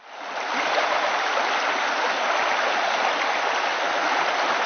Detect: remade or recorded recorded